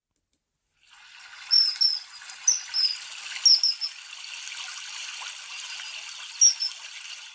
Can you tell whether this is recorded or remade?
recorded